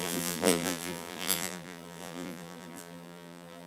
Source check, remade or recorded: remade